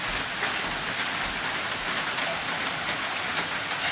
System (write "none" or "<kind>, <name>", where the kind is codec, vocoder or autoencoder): none